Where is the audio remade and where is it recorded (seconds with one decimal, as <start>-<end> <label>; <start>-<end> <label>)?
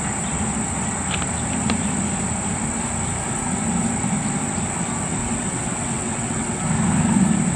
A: 0.0-5.2 recorded; 5.2-6.6 remade; 6.6-7.6 recorded